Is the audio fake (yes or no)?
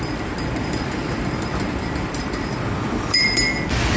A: yes